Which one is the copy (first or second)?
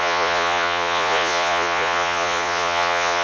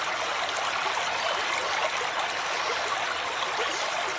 first